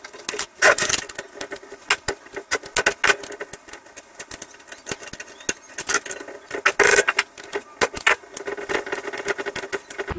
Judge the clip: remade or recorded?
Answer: recorded